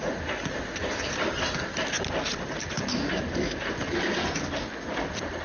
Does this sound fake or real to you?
real